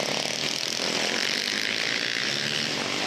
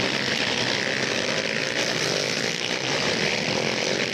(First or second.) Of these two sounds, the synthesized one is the second